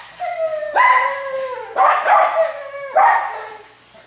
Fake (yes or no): no